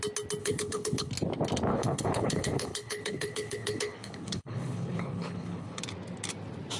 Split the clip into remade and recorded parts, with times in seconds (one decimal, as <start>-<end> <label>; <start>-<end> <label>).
0.0-0.4 recorded; 0.4-1.1 remade; 1.1-1.7 recorded; 1.7-5.8 remade; 5.8-6.8 recorded